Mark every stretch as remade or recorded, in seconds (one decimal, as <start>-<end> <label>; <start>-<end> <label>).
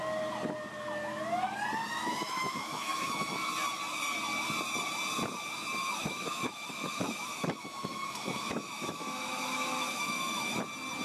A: 0.0-1.8 recorded; 1.8-3.5 remade; 3.5-5.8 recorded; 5.8-10.6 remade; 10.6-11.0 recorded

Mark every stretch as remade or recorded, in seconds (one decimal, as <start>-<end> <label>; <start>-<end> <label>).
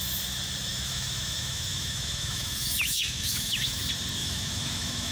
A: 0.0-0.7 recorded; 0.7-3.8 remade; 3.8-4.2 recorded; 4.2-5.1 remade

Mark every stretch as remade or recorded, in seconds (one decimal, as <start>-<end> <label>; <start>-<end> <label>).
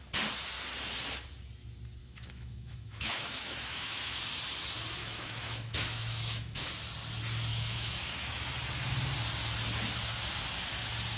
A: 0.0-2.0 recorded; 2.0-4.2 remade; 4.2-5.0 recorded; 5.0-6.7 remade; 6.7-7.5 recorded; 7.5-8.4 remade; 8.4-11.2 recorded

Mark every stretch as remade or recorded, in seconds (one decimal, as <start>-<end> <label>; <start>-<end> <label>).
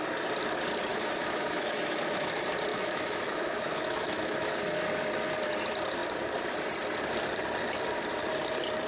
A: 0.0-0.9 recorded; 0.9-2.3 remade; 2.3-2.7 recorded; 2.7-4.6 remade; 4.6-8.9 recorded